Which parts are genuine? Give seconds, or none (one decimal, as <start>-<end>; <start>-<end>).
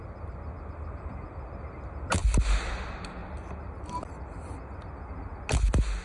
0.0-6.0